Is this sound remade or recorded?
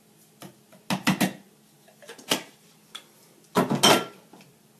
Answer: recorded